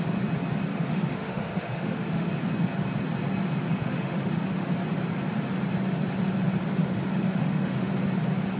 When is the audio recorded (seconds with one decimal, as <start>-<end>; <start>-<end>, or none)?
0.0-0.7; 2.3-3.8; 4.7-6.8; 7.9-8.6